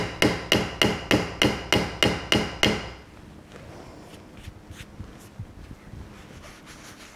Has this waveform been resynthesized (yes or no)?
no